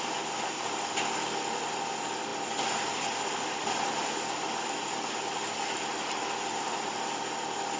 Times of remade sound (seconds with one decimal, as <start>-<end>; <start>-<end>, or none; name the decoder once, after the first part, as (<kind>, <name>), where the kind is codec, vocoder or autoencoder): none

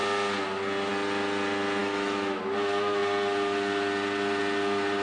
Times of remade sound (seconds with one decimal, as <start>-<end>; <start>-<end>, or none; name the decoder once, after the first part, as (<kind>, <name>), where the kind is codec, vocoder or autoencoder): 1.8-2.4 (autoencoder, DAC-VAE)

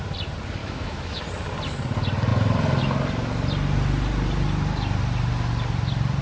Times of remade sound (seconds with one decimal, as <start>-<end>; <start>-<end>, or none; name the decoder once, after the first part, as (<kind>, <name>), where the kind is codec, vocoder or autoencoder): 0.6-1.2 (autoencoder, DAC-VAE)

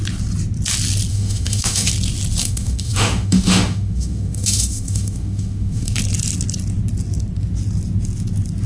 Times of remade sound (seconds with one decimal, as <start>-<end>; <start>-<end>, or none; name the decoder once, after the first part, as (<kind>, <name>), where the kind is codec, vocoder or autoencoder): 1.1-1.9 (autoencoder, DAC-VAE); 2.4-6.0

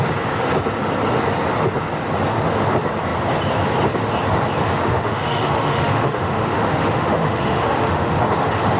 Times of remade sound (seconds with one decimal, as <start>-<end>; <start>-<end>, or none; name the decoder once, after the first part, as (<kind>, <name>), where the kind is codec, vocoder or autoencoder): 4.7-8.2 (autoencoder, DAC-VAE)

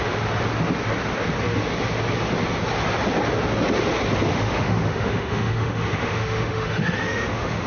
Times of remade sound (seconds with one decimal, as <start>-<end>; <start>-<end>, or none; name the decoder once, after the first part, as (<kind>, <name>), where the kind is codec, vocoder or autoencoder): 4.3-7.7 (autoencoder, DAC-VAE)

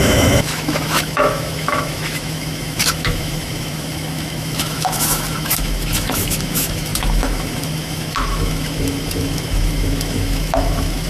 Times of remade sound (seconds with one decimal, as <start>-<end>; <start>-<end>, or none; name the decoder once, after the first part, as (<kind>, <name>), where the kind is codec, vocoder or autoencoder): 0.0-11.1 (autoencoder, DAC-VAE)